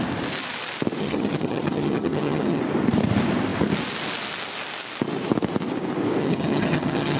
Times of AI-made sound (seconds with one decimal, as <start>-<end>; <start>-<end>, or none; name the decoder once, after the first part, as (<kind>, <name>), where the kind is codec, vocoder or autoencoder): 1.0-2.6 (vocoder, HiFi-GAN); 6.2-7.2